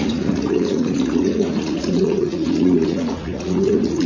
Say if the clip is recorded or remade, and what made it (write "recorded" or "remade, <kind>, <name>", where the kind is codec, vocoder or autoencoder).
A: remade, vocoder, Vocos